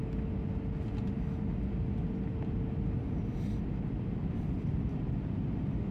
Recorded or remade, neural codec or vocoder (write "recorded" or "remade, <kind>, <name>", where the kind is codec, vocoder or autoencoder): recorded